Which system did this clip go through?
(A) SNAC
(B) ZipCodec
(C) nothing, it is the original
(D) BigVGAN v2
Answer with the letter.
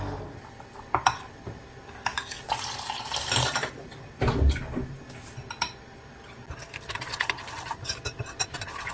C